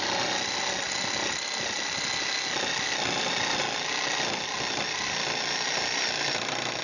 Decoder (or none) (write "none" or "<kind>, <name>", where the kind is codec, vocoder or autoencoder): none